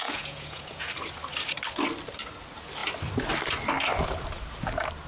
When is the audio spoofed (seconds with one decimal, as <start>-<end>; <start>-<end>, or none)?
0.0-0.9